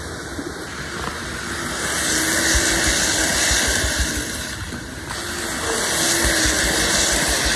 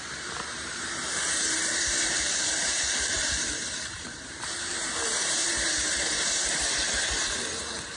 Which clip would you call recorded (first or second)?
first